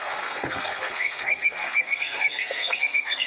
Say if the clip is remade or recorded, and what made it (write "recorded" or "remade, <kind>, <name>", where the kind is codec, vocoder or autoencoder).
remade, codec, SNAC